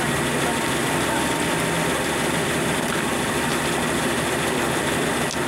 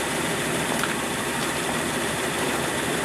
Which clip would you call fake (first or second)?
second